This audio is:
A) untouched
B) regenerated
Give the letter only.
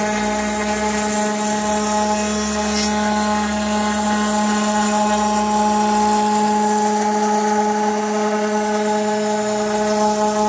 A